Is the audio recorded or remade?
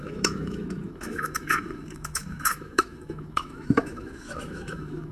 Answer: remade